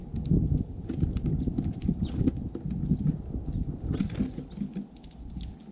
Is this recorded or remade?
recorded